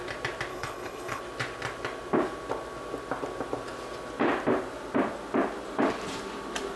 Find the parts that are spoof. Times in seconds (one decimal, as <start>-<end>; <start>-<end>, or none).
0.5-1.2